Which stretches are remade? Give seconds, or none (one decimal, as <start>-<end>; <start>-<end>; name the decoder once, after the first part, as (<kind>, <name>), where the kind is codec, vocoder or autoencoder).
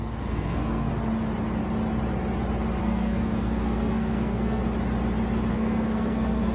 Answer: 0.0-0.9 (codec, SNAC); 2.8-4.6; 5.5-6.5